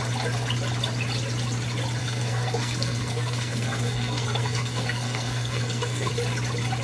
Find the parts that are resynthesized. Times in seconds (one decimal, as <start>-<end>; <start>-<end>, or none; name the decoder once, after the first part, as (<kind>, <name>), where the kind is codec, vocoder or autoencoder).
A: 2.0-6.1 (codec, SNAC)